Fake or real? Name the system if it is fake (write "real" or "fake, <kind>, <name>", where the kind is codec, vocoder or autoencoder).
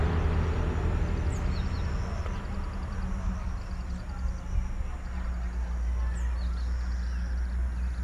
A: real